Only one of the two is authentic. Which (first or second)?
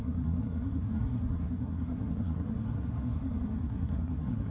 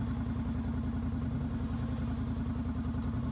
second